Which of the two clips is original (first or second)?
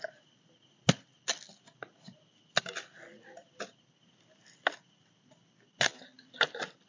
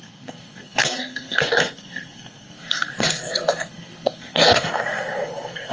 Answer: first